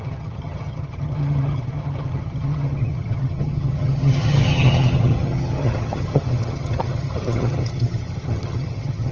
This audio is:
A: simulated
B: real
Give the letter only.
A